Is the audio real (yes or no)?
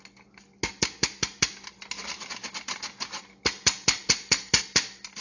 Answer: yes